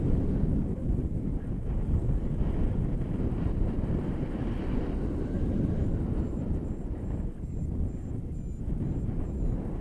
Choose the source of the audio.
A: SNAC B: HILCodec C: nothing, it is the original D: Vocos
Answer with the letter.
C